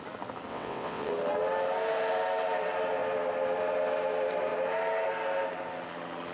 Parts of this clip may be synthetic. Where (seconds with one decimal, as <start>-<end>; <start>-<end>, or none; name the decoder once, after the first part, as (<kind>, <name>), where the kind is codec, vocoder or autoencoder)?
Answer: 0.5-1.1 (vocoder, WaveNeXt)